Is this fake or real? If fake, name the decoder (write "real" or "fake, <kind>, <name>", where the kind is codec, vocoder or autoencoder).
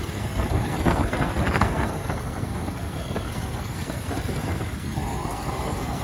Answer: fake, codec, SNAC